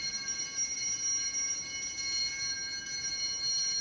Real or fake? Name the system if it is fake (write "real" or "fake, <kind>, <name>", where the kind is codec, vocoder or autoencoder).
real